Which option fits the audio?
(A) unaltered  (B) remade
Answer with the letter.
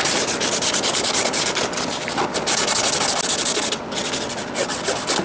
A